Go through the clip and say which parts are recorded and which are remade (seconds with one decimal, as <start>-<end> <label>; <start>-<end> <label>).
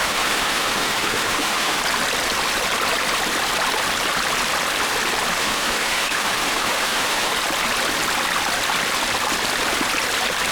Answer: 0.0-1.8 remade; 1.8-5.4 recorded; 5.4-7.3 remade; 7.3-10.5 recorded